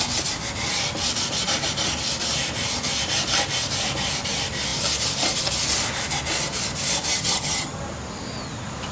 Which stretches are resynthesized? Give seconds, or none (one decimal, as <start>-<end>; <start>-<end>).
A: 7.1-7.8